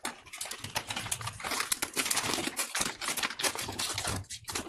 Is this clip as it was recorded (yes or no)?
yes